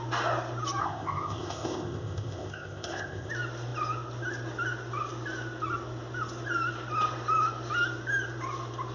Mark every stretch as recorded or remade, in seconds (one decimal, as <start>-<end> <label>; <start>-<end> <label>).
0.0-0.8 recorded; 0.8-3.3 remade; 3.3-8.9 recorded